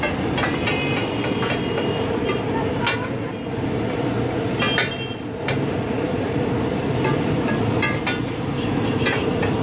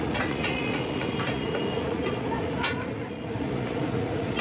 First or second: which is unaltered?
first